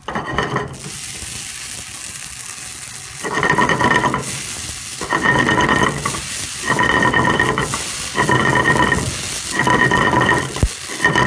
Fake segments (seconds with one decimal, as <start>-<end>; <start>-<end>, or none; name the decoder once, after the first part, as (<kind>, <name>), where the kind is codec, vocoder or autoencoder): none